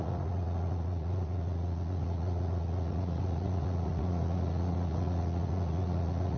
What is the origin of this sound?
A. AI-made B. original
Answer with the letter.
A